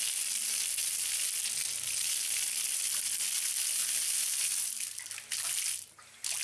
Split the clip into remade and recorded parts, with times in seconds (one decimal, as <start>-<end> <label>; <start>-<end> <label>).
0.0-6.4 recorded